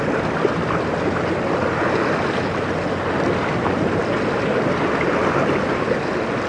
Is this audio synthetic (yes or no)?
no